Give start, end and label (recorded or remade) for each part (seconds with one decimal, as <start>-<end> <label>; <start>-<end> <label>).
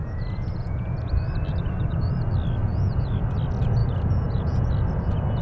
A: 0.0-0.9 remade; 0.9-2.7 recorded; 2.7-3.2 remade; 3.2-3.8 recorded; 3.8-4.7 remade; 4.7-5.4 recorded